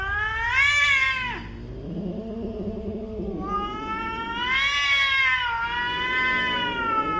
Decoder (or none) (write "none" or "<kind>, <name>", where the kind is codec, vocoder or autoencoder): none